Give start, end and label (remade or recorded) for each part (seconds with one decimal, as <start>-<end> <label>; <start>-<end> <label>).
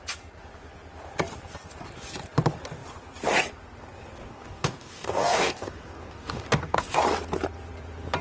0.0-4.2 recorded; 4.2-7.0 remade; 7.0-8.2 recorded